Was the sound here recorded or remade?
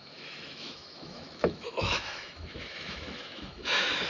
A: remade